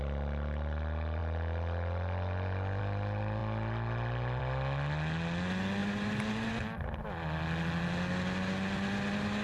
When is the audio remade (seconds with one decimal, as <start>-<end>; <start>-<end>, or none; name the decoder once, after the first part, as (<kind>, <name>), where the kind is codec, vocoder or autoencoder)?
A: 5.8-6.6 (vocoder, BigVGAN v2)